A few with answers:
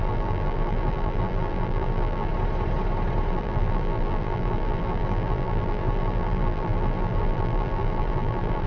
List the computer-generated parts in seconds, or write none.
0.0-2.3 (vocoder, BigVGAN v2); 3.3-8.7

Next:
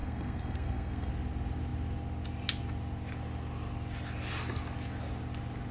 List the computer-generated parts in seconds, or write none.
0.0-1.1 (codec, SNAC)

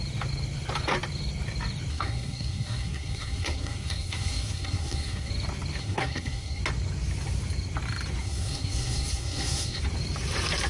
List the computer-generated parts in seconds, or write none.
1.9-5.3 (codec, SNAC); 5.8-6.6; 8.2-9.8